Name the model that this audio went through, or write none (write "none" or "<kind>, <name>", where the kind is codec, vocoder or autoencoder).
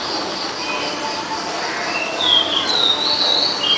none